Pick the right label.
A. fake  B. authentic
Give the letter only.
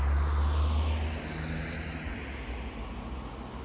B